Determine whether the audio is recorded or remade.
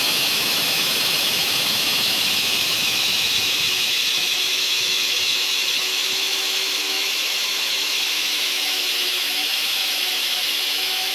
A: remade